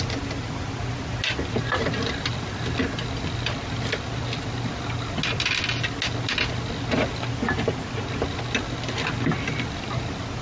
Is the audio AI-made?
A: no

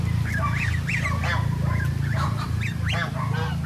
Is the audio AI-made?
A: no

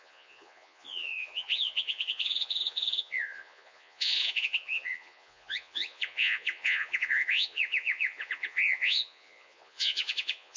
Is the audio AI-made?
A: yes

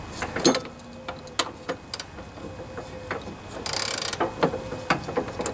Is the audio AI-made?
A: no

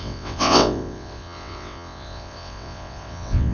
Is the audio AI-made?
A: yes